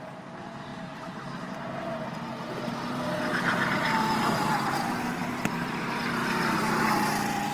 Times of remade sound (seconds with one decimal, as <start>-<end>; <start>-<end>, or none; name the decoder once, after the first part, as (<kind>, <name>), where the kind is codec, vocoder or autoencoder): 5.2-5.8 (vocoder, BigVGAN v2); 6.2-6.8